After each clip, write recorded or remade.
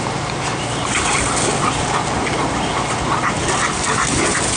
recorded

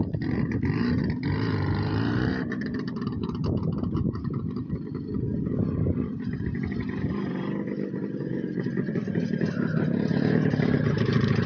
remade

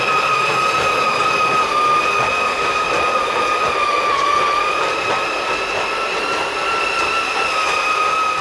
recorded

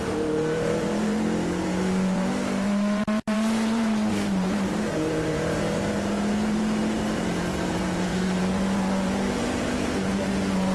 remade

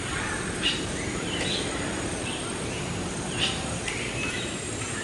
remade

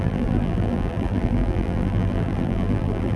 remade